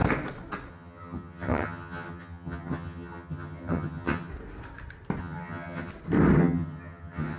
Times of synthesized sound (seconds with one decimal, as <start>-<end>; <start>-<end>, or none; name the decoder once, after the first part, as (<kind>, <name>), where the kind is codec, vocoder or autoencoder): 0.7-4.3 (vocoder, HiFi-GAN); 5.2-5.9; 6.4-7.4